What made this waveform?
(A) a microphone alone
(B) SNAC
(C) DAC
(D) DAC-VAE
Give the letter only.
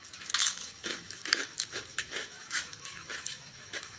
D